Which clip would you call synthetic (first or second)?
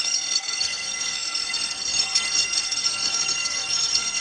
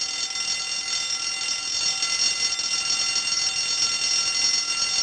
first